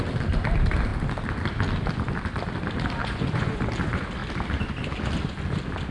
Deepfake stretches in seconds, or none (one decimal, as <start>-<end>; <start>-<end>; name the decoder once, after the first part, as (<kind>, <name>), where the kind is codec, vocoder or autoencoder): 3.0-3.6 (vocoder, Vocos)